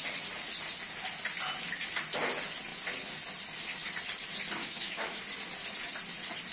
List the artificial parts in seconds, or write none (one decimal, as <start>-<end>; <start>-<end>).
4.6-5.2